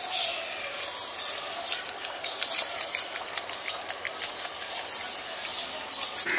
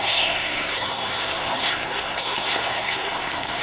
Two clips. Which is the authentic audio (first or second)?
first